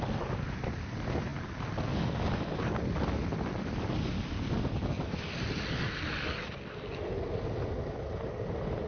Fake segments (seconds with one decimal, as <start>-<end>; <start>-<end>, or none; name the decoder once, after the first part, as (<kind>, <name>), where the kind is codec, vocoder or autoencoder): none